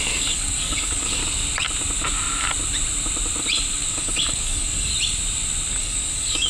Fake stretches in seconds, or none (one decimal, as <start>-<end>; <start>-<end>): 0.0-1.2; 3.9-4.9; 5.7-6.5